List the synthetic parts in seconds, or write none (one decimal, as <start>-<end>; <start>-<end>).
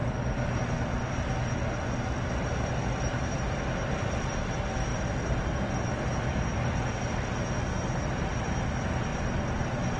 none